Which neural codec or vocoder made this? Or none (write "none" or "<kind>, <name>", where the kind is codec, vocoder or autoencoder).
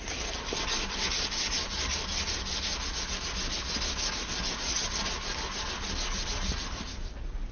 none